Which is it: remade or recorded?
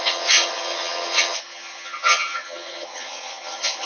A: remade